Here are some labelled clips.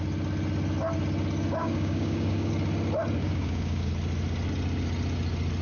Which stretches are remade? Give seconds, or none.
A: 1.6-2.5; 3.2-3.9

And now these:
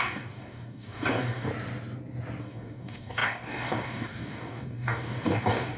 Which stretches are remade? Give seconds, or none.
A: 0.0-1.5; 2.4-5.8

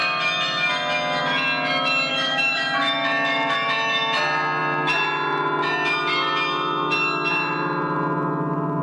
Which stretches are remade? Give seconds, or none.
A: 2.1-2.6